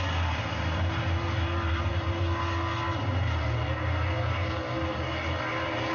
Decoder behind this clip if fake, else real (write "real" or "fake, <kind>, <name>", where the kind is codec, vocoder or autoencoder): real